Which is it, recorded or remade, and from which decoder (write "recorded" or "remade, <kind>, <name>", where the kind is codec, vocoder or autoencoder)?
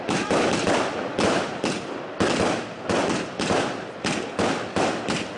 recorded